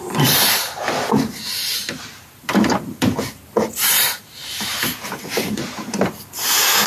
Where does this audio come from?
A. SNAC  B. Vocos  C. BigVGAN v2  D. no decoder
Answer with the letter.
C